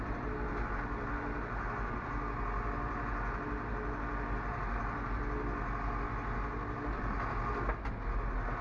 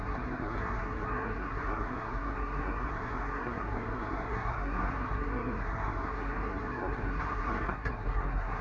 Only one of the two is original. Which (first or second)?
first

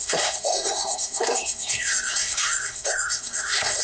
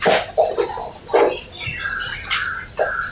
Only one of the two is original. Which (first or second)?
second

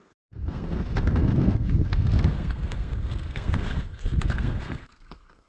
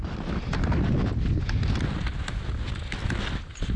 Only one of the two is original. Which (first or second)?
second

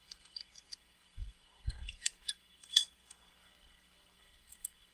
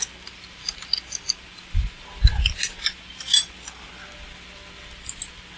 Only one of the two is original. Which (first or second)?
second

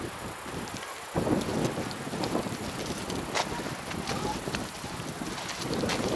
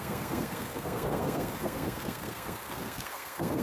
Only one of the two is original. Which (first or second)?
first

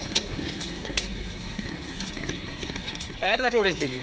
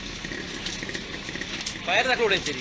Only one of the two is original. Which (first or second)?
second